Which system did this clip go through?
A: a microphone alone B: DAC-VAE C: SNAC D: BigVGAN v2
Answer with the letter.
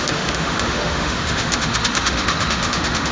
B